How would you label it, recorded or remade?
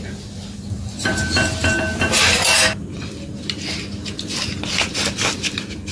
recorded